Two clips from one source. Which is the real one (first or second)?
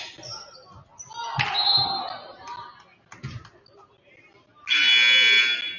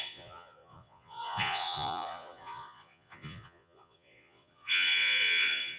first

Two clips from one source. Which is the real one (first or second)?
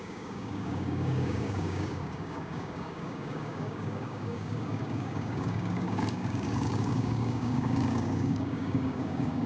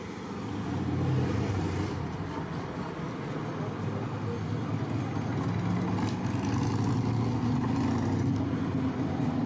second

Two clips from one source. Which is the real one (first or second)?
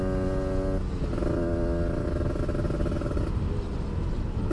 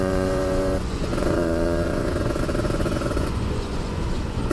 first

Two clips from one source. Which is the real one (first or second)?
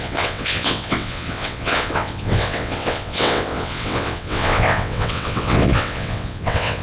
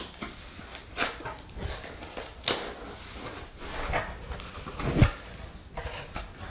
second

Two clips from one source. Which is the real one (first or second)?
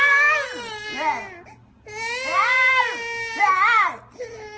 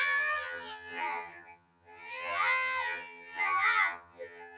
first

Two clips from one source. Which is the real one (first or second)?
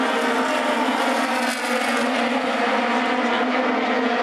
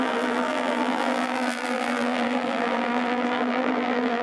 first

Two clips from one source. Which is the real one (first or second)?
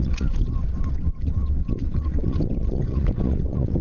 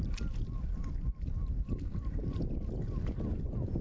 second